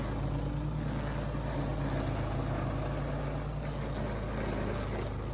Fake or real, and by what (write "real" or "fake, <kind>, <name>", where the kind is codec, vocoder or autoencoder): real